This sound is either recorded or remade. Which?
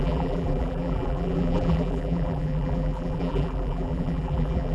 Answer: remade